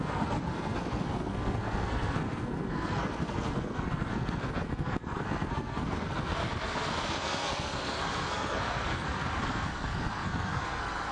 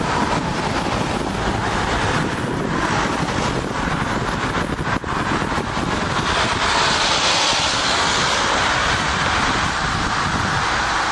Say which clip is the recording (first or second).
second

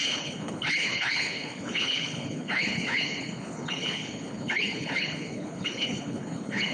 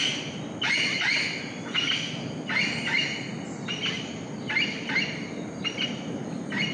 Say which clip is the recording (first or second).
second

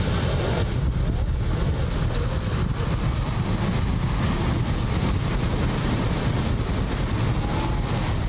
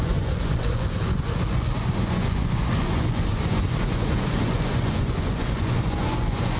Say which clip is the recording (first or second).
first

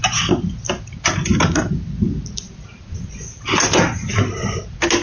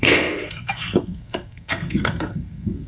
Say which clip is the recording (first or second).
first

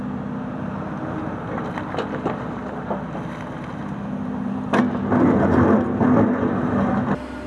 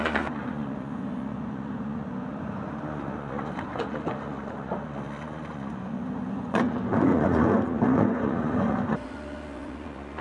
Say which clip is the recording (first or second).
first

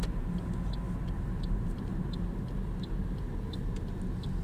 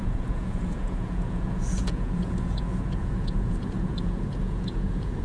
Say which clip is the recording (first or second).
first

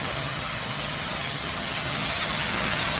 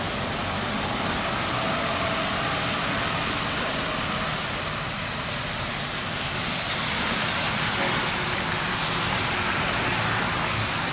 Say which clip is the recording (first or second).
second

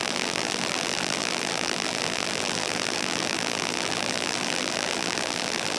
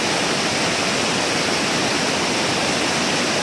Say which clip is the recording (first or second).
second